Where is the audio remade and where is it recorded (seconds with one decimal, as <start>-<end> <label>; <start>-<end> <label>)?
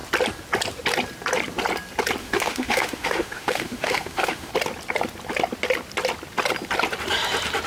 0.0-2.2 recorded; 2.2-4.5 remade; 4.5-7.7 recorded